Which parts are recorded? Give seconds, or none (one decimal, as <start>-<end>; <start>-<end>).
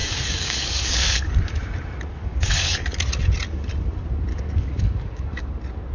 1.3-2.1; 2.7-4.3; 5.5-5.9